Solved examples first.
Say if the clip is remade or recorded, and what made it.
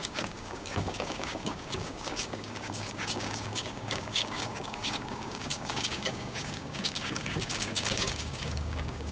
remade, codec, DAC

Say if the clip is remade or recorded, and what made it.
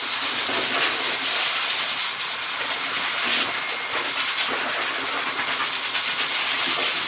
recorded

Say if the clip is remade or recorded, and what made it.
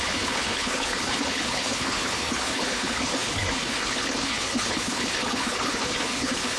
remade, codec, HILCodec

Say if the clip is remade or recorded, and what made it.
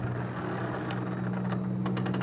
recorded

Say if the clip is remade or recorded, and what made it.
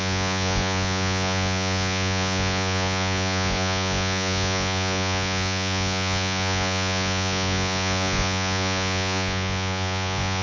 remade, vocoder, Vocos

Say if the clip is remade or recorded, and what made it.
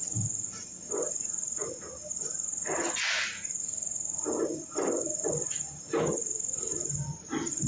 recorded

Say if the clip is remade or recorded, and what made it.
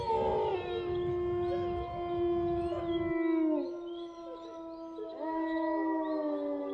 recorded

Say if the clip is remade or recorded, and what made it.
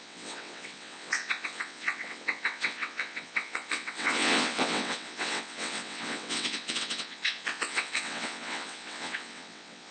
remade, vocoder, WaveNeXt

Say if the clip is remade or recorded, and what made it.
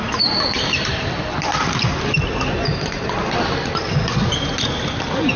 recorded